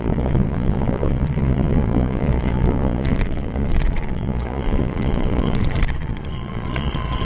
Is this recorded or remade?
remade